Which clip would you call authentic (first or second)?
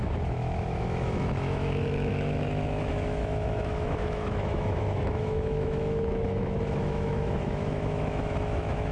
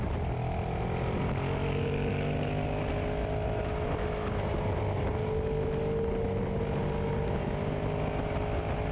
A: second